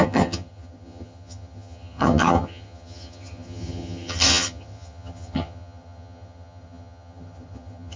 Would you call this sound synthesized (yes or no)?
yes